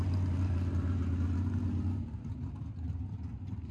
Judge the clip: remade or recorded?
recorded